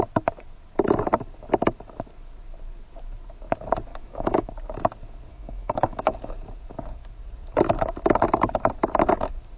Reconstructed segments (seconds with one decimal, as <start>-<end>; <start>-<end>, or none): 3.9-4.5; 5.3-6.0